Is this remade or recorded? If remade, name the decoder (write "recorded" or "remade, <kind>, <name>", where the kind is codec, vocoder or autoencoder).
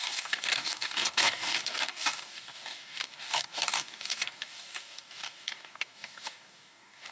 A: remade, codec, DAC